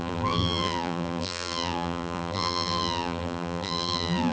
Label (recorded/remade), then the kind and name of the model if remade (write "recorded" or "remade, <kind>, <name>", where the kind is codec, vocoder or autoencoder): remade, vocoder, BigVGAN v2